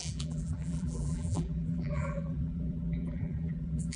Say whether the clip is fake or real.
fake